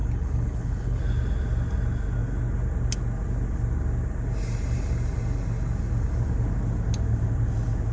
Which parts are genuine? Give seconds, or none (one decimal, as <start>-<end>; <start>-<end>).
1.0-7.9